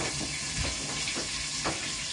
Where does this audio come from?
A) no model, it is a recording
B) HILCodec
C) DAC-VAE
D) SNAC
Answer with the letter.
A